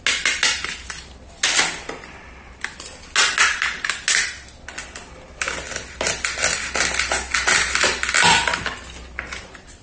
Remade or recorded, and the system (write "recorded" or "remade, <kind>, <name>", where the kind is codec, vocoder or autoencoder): recorded